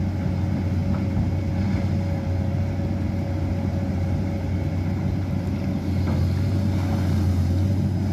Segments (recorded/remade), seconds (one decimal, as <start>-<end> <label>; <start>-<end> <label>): 0.0-8.1 recorded